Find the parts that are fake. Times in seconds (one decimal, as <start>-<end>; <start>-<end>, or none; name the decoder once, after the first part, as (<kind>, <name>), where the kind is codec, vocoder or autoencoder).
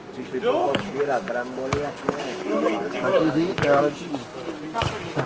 0.6-3.8 (codec, DAC)